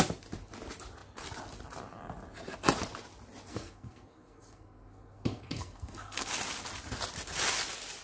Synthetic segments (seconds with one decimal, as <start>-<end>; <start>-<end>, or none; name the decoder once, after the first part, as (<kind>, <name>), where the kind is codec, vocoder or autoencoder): 3.5-6.3 (codec, SNAC)